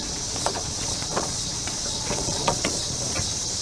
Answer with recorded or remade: remade